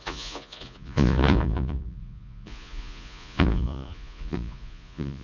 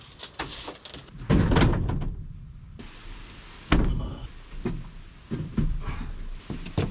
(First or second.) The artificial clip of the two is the first